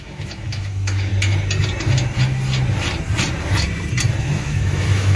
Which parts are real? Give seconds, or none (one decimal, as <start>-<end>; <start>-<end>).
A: 1.1-4.2